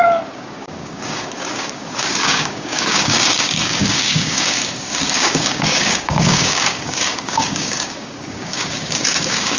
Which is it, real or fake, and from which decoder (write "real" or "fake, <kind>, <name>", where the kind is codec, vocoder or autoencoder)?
fake, codec, DAC